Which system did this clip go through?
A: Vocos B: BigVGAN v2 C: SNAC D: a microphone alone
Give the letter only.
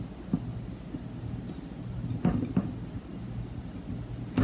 D